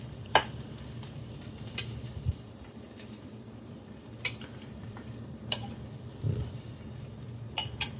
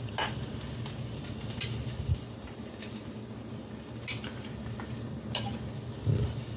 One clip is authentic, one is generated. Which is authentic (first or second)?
second